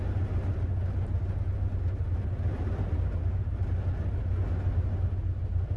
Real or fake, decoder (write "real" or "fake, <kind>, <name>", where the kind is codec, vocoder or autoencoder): real